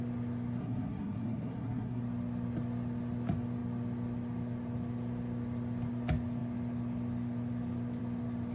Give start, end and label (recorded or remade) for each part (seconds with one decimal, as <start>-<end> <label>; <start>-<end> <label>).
0.0-0.6 recorded; 0.6-2.0 remade; 2.0-8.5 recorded